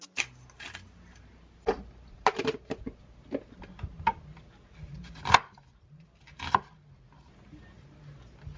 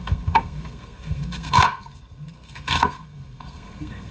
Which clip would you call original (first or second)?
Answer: first